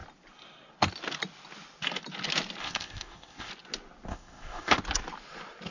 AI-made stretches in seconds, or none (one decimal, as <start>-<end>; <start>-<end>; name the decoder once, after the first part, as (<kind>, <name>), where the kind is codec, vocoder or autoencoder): 2.6-3.5 (codec, ZipCodec); 4.1-4.8